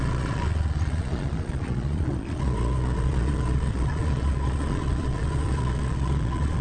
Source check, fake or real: fake